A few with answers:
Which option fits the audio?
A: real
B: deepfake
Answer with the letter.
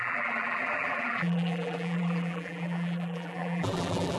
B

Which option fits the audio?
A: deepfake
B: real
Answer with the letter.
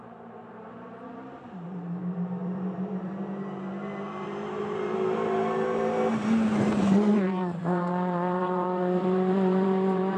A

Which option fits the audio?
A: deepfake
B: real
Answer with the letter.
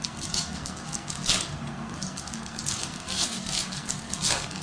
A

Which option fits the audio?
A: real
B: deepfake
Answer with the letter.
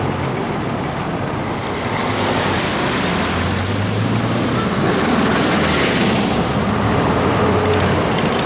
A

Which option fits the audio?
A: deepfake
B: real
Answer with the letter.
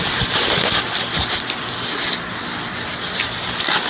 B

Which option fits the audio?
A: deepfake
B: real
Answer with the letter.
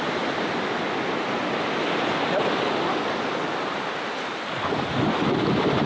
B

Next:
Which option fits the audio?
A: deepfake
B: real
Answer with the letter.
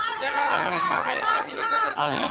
A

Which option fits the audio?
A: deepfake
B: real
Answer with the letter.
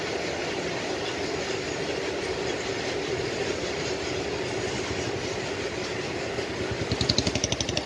B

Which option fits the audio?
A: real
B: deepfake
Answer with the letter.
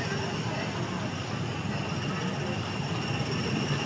A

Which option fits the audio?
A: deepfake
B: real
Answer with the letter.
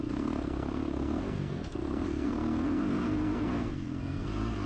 A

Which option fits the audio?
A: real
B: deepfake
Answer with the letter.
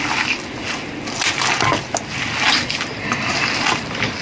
A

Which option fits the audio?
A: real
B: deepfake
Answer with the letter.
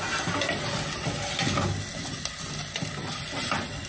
A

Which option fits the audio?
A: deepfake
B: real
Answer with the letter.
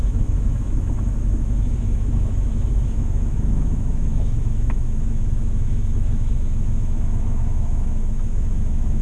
A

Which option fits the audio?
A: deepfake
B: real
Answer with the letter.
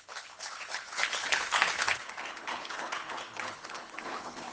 A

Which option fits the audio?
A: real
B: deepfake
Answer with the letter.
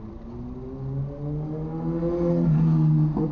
A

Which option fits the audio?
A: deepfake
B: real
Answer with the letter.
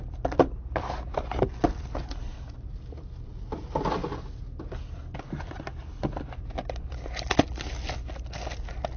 B